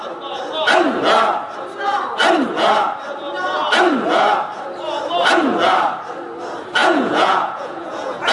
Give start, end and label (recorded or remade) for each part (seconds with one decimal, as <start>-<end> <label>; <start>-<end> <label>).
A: 0.0-6.8 recorded; 6.8-8.3 remade

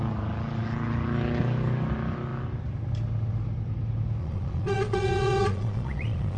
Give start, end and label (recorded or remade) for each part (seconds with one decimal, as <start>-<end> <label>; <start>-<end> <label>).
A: 0.0-4.2 recorded; 4.2-6.4 remade

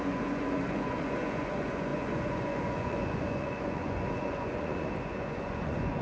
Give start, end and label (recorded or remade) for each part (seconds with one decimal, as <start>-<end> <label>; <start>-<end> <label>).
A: 0.0-6.0 remade

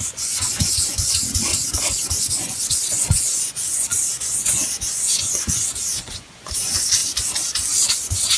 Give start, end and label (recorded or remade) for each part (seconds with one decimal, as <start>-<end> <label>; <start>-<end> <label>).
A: 0.0-1.5 remade; 1.5-2.2 recorded; 2.2-7.0 remade; 7.0-7.9 recorded; 7.9-8.4 remade